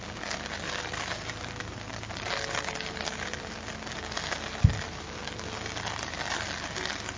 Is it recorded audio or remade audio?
recorded